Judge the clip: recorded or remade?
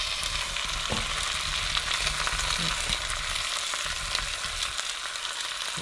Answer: recorded